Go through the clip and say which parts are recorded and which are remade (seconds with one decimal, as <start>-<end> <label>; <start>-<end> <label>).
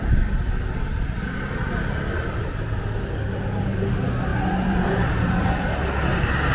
0.0-4.3 recorded; 4.3-5.1 remade; 5.1-6.5 recorded